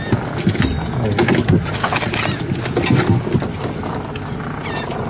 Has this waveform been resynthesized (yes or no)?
no